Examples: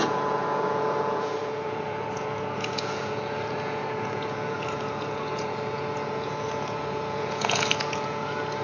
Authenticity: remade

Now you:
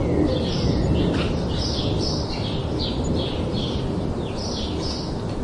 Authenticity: recorded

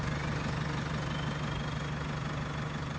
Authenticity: recorded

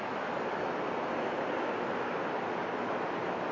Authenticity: recorded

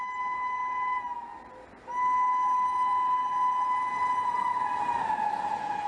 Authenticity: recorded